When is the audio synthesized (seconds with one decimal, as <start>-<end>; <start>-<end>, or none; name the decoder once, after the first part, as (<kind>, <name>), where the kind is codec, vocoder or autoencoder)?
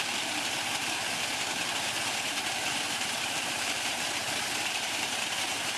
2.1-5.8 (vocoder, BigVGAN v2)